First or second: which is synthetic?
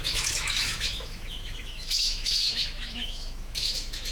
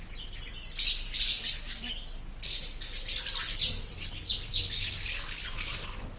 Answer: first